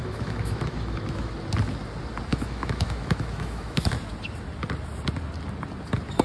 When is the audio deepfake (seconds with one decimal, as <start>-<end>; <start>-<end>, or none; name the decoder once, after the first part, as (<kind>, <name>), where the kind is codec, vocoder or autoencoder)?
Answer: 0.0-1.3 (autoencoder, DAC-VAE); 2.3-3.9